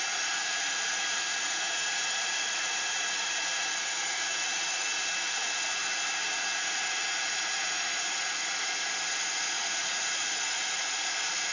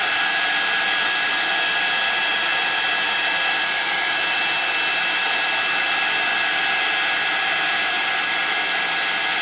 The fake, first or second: first